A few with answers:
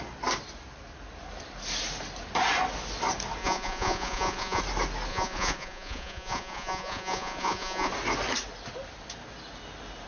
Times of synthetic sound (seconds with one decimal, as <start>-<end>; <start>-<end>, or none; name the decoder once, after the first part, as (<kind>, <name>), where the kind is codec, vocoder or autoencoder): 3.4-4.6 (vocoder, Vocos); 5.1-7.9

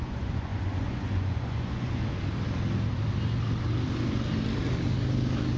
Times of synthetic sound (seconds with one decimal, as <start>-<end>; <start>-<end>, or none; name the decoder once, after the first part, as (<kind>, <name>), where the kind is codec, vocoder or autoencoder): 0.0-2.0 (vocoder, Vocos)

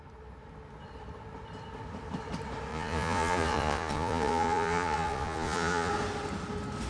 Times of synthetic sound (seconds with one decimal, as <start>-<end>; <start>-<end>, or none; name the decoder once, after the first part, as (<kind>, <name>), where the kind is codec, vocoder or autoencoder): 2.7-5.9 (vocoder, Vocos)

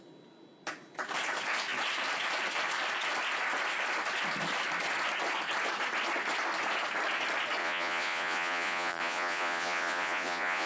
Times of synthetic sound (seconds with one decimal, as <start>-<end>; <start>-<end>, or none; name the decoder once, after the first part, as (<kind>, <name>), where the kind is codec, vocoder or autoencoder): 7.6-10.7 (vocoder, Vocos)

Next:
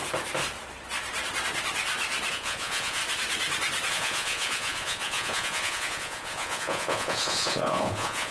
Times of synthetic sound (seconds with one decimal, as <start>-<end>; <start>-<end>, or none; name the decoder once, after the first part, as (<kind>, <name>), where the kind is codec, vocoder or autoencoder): 2.3-3.0 (vocoder, Vocos); 3.9-8.3

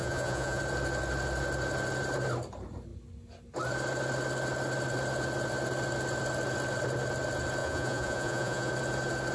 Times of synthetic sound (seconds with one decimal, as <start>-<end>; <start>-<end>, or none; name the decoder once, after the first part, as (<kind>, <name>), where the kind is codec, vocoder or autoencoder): 0.0-0.6 (vocoder, Vocos); 7.6-8.7

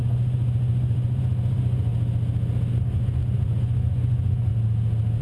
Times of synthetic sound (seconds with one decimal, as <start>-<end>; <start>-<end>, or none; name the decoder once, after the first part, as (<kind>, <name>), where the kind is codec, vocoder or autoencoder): 0.0-1.9 (vocoder, Vocos); 2.7-4.5

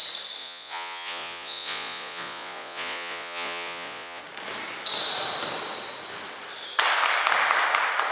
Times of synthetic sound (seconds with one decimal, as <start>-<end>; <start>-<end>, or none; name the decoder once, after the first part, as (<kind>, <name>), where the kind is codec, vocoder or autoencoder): 0.4-4.2 (vocoder, Vocos)